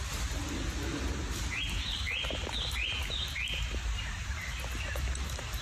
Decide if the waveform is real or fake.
real